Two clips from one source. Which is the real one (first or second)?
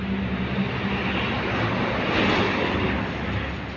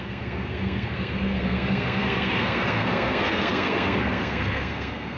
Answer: first